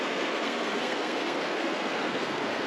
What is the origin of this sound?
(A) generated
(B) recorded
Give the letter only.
A